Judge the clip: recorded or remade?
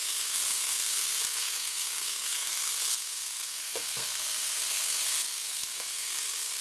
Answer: remade